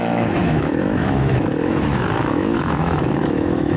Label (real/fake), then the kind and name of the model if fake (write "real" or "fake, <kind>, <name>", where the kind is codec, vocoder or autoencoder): fake, autoencoder, DAC-VAE